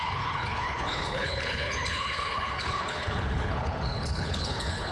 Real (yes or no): no